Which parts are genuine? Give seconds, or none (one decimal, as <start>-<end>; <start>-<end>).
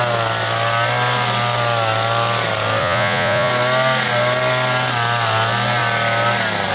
0.0-2.8; 3.5-6.7